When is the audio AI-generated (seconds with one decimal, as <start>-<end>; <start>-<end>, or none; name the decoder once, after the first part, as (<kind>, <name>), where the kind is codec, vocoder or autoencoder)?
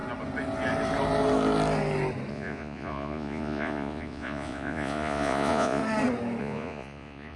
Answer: 2.3-5.8 (vocoder, Vocos); 6.4-7.4